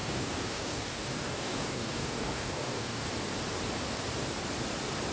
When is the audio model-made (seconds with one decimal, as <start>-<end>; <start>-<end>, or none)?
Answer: 0.0-3.1

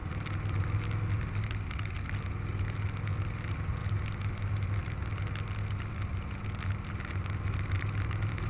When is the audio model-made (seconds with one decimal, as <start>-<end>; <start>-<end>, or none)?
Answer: none